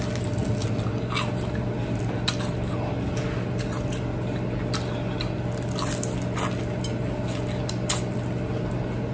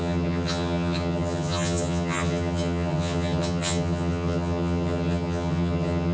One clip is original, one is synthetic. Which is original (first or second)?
first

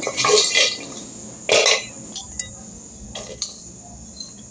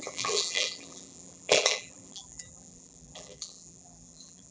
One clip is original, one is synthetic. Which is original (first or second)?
first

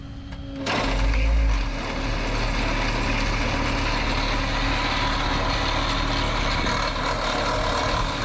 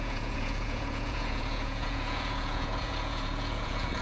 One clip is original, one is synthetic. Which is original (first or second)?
first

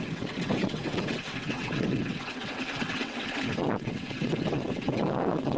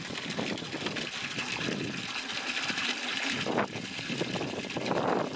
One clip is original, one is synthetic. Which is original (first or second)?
second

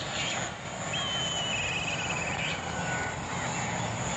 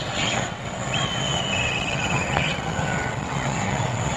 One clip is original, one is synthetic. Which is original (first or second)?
first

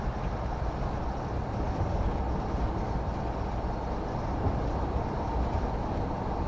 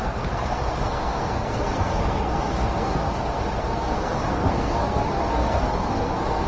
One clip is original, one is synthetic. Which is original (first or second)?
first